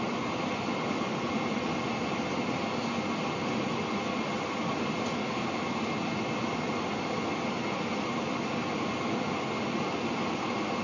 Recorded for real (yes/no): yes